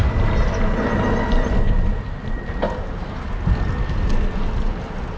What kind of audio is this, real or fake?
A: real